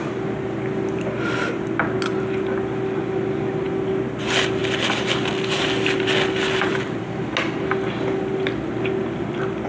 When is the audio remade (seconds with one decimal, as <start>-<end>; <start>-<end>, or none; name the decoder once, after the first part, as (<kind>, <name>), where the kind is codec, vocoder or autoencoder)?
6.7-7.2 (vocoder, BigVGAN v2)